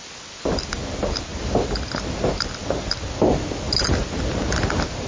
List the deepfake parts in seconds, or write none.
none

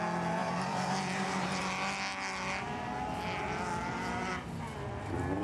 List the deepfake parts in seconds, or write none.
0.4-1.6 (vocoder, BigVGAN v2)

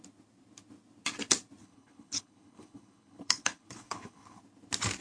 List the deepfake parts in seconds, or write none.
1.6-4.4 (codec, HILCodec)